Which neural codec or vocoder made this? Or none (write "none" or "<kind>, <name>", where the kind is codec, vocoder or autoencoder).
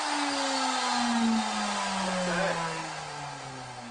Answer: none